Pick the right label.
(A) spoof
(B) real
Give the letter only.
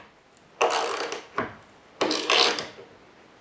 B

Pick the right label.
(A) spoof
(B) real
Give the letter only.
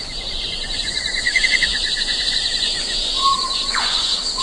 A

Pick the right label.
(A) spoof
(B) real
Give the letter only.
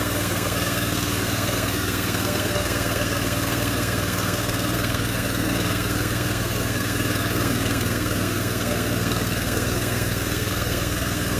A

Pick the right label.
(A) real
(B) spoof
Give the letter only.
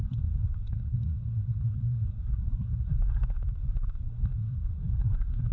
B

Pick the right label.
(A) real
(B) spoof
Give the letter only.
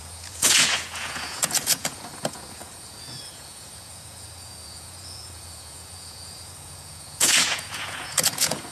B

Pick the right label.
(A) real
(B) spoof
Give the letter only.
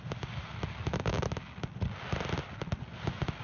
A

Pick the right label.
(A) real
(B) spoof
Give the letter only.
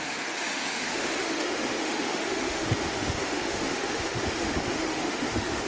B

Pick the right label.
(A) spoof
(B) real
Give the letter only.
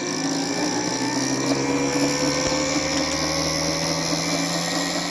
B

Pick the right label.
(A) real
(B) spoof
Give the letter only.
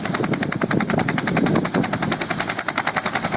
A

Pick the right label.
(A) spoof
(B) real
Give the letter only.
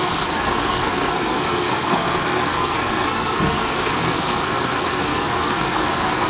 A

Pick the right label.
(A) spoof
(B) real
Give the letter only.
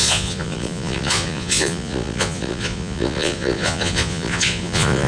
A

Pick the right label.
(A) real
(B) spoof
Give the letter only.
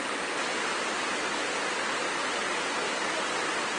A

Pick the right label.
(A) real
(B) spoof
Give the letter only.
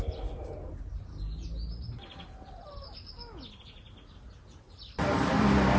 A